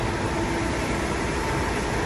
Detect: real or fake real